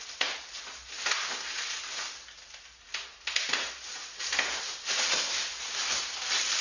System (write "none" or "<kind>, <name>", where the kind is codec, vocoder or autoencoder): none